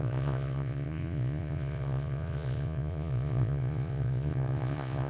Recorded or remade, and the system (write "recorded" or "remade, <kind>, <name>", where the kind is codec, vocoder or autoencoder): remade, vocoder, Vocos